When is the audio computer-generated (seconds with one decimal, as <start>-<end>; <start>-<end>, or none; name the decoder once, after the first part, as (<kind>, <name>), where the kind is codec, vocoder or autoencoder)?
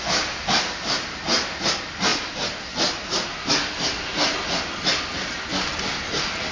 none